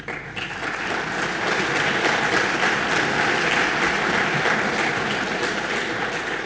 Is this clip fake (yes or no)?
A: no